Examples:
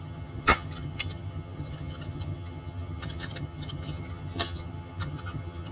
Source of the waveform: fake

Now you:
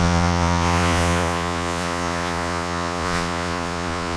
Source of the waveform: fake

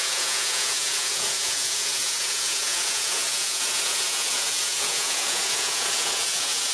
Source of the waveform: fake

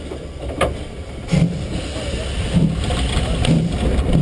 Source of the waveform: real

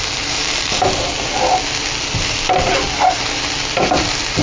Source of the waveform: real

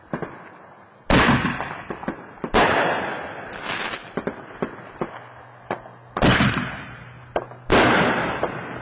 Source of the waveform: real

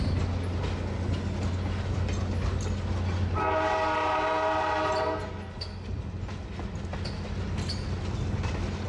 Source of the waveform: real